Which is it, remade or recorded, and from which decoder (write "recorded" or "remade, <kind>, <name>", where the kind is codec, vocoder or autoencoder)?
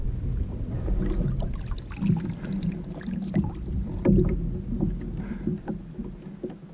recorded